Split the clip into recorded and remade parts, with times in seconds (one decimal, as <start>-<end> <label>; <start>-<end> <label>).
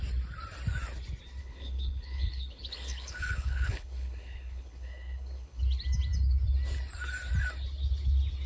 0.0-1.4 recorded; 1.4-5.6 remade; 5.6-8.5 recorded